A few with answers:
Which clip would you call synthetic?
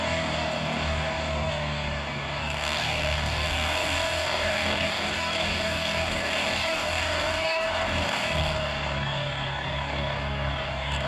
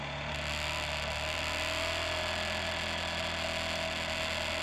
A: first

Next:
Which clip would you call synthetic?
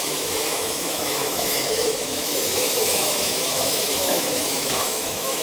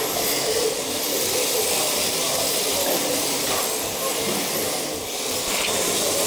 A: first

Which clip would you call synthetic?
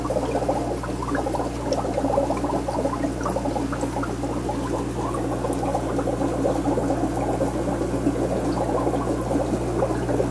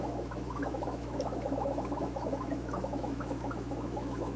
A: second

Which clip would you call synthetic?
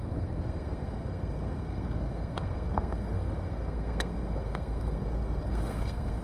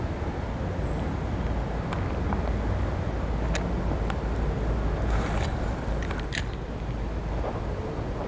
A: first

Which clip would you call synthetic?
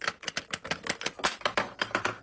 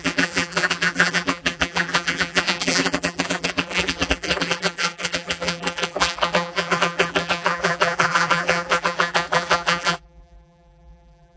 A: second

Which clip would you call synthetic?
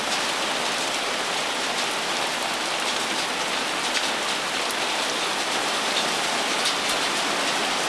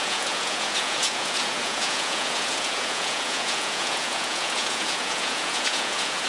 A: second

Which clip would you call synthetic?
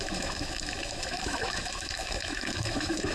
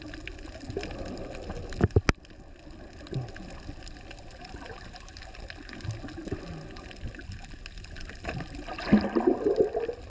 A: first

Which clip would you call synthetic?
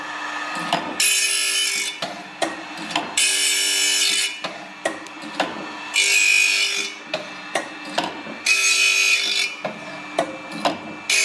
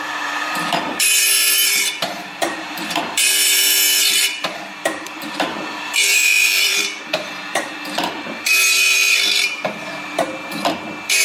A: second